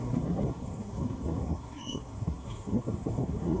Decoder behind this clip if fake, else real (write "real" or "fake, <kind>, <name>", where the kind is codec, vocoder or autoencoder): fake, codec, SNAC